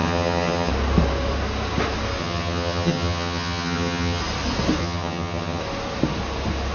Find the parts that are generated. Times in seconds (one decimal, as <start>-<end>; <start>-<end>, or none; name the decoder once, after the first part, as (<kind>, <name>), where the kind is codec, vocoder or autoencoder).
0.0-0.7 (vocoder, HiFi-GAN); 2.2-4.2; 4.8-5.6